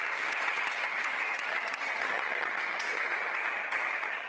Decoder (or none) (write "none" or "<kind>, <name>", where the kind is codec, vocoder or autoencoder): vocoder, HiFi-GAN